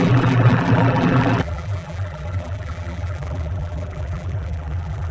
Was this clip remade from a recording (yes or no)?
yes